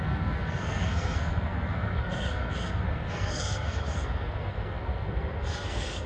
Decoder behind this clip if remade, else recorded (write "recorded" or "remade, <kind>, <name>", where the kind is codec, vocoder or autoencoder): remade, codec, SNAC